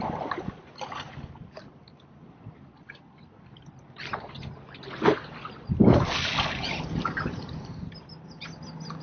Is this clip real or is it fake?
real